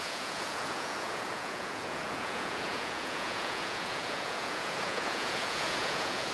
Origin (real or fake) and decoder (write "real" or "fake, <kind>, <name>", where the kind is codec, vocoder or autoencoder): fake, vocoder, Vocos